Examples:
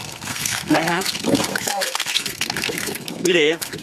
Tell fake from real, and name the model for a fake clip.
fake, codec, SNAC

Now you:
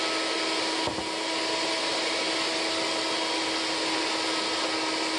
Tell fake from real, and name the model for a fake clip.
real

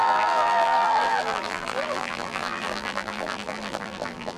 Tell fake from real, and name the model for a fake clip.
fake, vocoder, BigVGAN v2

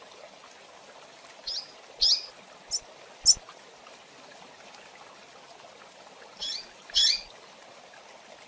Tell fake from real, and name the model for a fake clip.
real